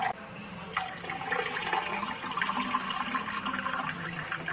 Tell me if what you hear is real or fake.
real